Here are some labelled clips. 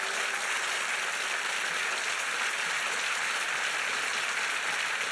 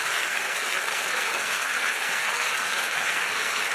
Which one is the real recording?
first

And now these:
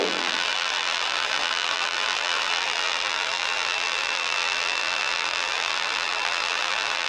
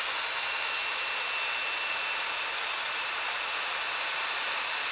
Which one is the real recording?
second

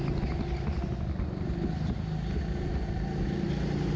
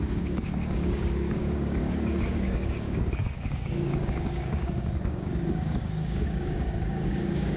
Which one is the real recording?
first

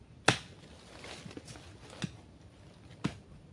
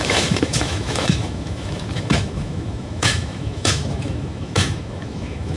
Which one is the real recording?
first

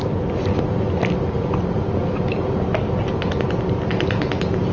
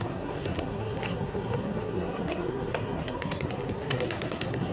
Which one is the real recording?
first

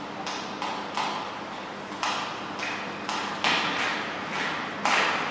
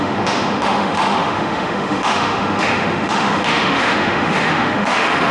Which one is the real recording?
first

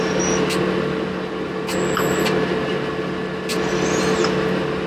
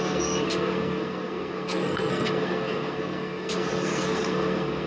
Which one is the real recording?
first